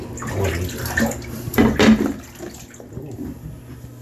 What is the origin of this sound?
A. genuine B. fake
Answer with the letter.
A